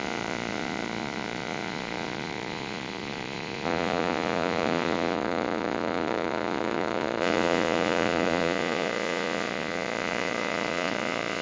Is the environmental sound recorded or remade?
remade